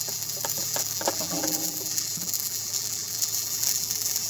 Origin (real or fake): fake